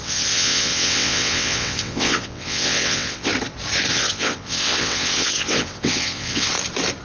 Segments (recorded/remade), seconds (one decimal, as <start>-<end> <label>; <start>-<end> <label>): 0.0-3.3 remade; 3.3-3.9 recorded; 3.9-6.5 remade; 6.5-7.0 recorded